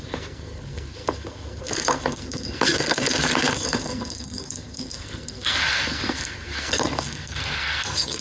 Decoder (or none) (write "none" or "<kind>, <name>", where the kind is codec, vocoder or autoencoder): codec, SNAC